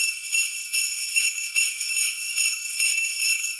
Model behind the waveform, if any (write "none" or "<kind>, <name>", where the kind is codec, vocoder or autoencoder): autoencoder, DAC-VAE